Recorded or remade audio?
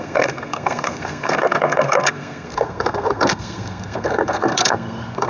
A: remade